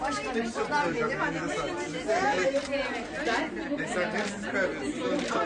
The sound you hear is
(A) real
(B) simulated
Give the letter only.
A